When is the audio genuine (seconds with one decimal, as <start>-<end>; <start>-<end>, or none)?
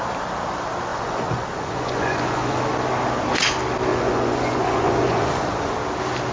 0.0-0.9; 2.6-3.9; 5.7-6.3